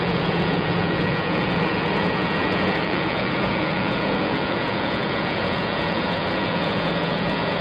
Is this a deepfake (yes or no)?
yes